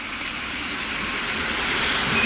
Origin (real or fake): fake